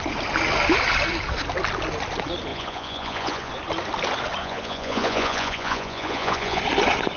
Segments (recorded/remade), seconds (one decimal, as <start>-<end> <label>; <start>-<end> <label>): 0.0-2.5 recorded; 2.5-3.5 remade; 3.5-4.4 recorded; 4.4-6.6 remade; 6.6-7.2 recorded